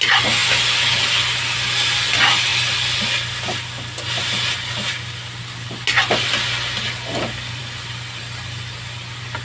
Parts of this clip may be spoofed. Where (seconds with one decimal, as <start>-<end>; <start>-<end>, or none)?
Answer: none